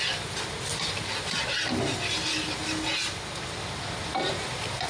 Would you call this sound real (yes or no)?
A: yes